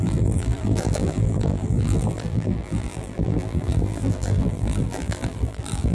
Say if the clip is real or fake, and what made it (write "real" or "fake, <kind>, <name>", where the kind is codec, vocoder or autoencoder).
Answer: fake, vocoder, BigVGAN v2